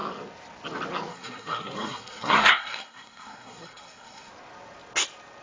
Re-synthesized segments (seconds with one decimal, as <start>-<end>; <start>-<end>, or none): 1.1-4.3